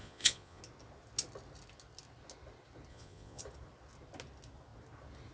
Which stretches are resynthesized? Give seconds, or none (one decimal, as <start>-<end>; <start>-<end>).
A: 0.0-0.6; 2.9-3.4